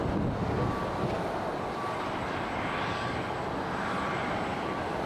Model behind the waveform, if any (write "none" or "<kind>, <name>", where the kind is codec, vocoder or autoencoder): none